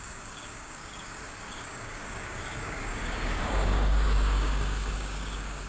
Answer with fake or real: fake